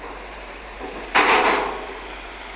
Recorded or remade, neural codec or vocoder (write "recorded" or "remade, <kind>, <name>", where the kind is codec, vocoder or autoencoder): remade, vocoder, BigVGAN v2